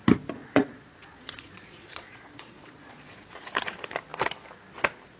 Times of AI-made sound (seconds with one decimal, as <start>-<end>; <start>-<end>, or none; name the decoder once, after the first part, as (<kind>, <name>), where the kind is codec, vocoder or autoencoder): 0.4-3.3 (vocoder, Vocos)

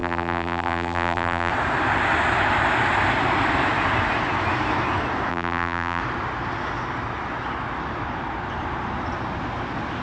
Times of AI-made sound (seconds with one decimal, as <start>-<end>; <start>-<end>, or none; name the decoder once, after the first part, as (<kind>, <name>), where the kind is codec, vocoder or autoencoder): 0.0-1.5 (vocoder, BigVGAN v2); 5.3-6.0